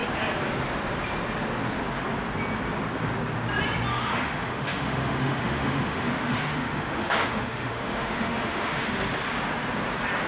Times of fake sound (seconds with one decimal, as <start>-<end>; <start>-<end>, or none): 3.9-8.9